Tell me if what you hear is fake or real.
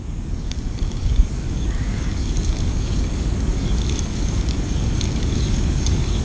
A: fake